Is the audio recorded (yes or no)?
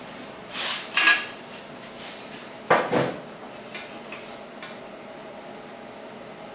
yes